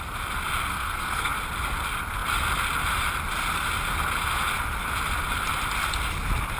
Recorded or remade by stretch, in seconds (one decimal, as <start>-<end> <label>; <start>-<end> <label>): 0.0-0.7 recorded; 0.7-1.3 remade; 1.3-6.6 recorded